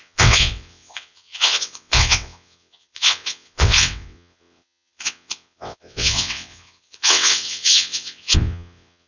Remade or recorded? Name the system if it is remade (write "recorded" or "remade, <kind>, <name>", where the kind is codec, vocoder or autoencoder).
remade, vocoder, WaveNeXt